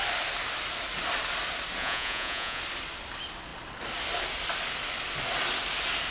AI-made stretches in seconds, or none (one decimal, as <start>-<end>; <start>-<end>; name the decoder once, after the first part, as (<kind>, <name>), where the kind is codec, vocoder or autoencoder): 1.8-2.6 (vocoder, Vocos)